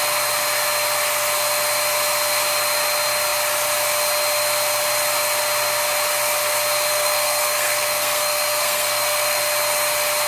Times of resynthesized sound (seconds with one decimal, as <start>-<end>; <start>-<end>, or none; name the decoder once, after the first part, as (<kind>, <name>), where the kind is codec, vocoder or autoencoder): 6.9-9.4 (codec, SNAC)